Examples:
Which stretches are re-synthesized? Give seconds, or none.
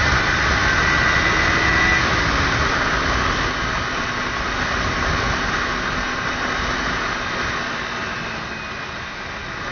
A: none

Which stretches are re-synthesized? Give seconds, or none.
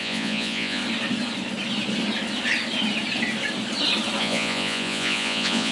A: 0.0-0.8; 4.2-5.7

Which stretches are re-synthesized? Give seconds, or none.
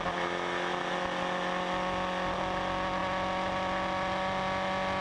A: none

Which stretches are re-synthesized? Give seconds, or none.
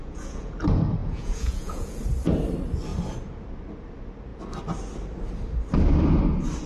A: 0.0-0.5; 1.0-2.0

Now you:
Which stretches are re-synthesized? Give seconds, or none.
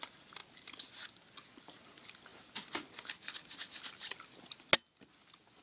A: none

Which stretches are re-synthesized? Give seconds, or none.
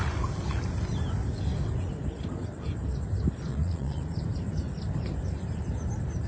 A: 3.5-4.0